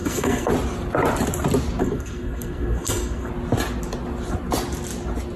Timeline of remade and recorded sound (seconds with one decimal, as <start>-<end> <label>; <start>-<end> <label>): 0.0-0.5 remade; 0.5-1.8 recorded; 1.8-3.3 remade; 3.3-5.4 recorded